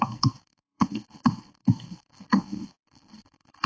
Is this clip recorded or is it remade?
remade